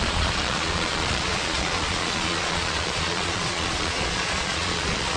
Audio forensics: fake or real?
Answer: fake